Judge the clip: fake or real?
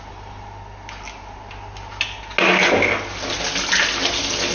real